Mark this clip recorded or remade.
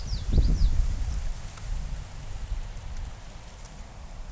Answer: recorded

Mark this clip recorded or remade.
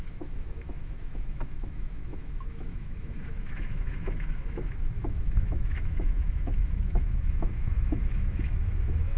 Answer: remade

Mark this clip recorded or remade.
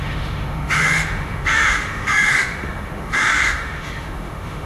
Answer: remade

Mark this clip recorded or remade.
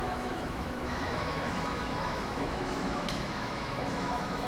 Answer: remade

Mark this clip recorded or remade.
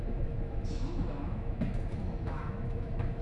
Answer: remade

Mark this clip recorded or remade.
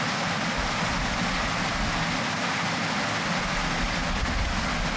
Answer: recorded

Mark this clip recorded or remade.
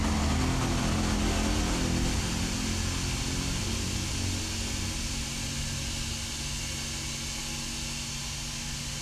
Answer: recorded